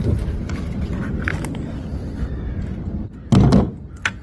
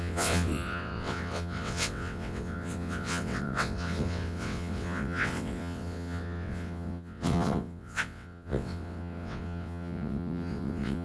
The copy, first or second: second